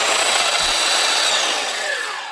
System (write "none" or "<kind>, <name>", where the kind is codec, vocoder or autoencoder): vocoder, WaveNeXt